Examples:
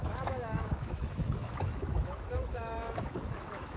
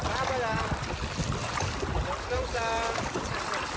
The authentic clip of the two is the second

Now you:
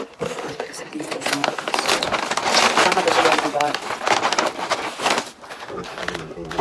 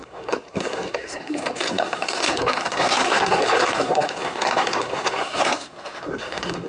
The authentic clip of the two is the first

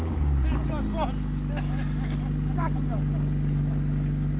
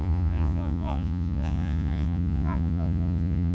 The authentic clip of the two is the first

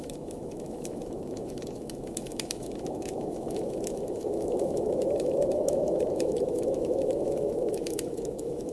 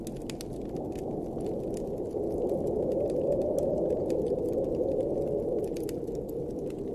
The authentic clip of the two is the second